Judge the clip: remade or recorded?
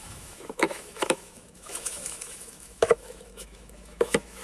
remade